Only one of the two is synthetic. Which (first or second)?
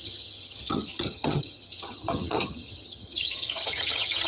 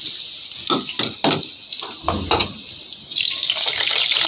first